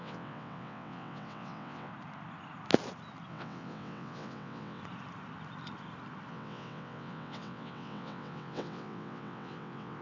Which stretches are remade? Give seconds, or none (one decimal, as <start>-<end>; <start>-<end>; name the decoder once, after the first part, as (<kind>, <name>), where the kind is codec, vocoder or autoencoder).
0.0-1.9 (vocoder, WaveNeXt); 3.3-4.8; 6.3-10.0